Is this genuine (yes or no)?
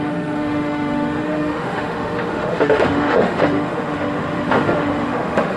no